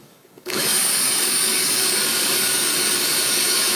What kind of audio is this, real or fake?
fake